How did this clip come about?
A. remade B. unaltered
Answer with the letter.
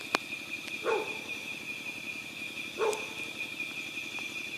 B